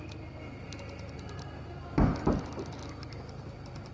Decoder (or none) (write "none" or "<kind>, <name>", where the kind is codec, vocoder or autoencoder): none